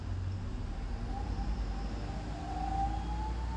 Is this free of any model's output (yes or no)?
yes